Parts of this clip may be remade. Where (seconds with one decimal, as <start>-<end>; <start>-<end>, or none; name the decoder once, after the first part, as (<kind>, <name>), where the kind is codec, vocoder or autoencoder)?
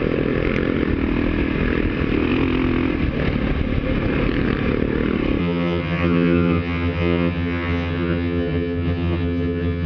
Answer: 5.4-9.9 (vocoder, HiFi-GAN)